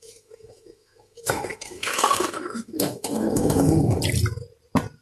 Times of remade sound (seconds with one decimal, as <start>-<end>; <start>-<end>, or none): 0.0-4.0